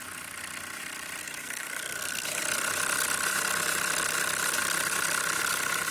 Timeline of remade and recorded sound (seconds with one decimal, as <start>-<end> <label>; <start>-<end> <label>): 0.0-1.2 recorded; 1.2-2.4 remade; 2.4-5.9 recorded